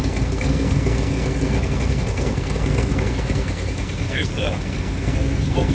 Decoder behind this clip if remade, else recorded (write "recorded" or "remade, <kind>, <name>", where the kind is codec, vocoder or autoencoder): remade, codec, SNAC